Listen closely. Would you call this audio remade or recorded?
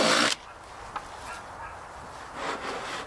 recorded